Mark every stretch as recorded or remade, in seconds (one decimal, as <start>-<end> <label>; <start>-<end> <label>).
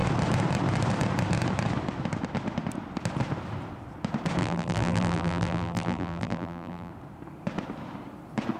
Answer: 0.0-4.4 recorded; 4.4-6.9 remade; 6.9-8.6 recorded